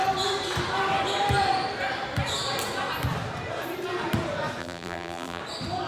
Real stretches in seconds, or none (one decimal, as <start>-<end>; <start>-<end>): 0.0-4.6; 5.4-5.9

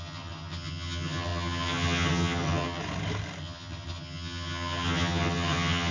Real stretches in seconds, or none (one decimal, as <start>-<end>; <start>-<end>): 2.8-3.4

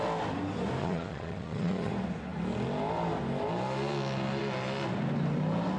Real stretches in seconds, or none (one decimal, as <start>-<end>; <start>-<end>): 0.0-0.8; 1.9-5.8

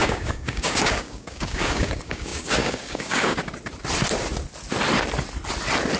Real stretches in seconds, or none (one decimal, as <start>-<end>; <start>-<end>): 3.4-6.0

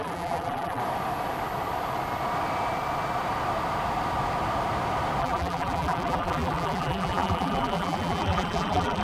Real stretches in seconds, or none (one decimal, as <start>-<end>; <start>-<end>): 0.8-5.2